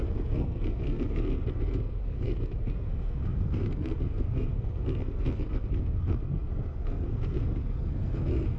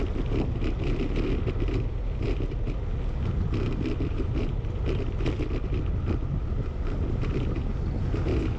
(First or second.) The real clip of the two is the second